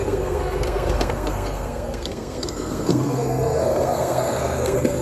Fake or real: fake